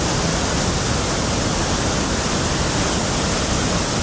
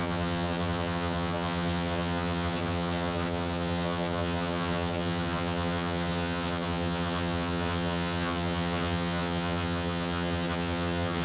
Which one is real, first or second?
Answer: first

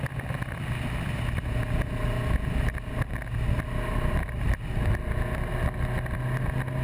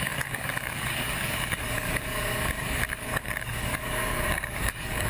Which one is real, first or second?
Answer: first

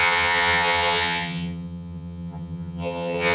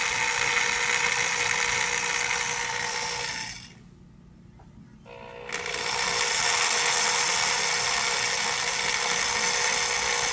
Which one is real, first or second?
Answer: second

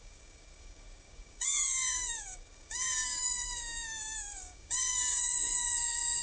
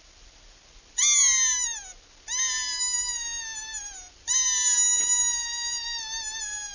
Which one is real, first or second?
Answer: second